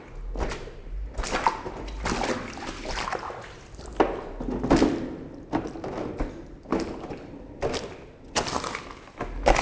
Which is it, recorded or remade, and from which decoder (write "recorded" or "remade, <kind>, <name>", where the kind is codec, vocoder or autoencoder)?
recorded